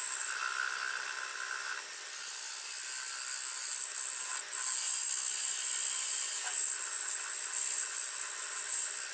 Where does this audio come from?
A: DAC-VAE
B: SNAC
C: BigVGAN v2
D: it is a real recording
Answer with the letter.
D